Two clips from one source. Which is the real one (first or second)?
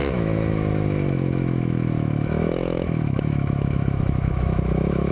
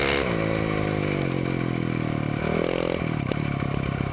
second